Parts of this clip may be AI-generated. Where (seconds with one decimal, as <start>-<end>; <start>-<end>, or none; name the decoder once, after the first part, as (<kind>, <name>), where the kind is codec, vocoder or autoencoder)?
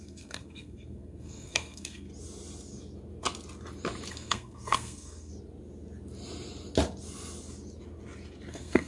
0.0-2.1 (codec, SNAC); 4.1-5.3; 8.5-8.9